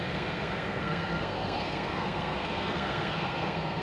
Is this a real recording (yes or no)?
no